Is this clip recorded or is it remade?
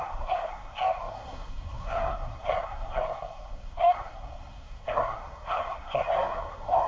remade